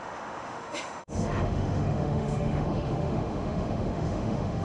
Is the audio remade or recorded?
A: remade